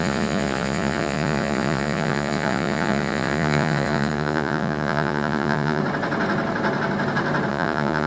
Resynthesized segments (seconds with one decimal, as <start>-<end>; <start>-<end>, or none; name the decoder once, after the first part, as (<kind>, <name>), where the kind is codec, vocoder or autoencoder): 0.0-5.8 (vocoder, Vocos); 7.5-8.1